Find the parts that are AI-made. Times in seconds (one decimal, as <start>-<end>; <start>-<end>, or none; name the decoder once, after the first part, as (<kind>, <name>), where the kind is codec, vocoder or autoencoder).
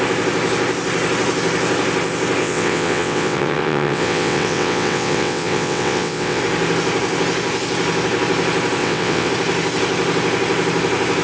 2.4-6.4 (vocoder, WaveNeXt); 8.8-9.3